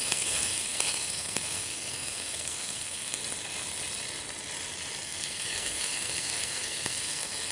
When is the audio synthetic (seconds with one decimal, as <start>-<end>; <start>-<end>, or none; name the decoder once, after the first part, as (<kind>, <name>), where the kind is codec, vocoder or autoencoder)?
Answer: 0.0-3.2 (codec, SNAC); 5.0-7.5